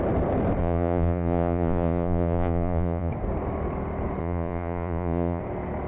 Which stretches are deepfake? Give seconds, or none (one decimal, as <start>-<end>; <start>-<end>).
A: 0.6-3.1; 4.2-5.4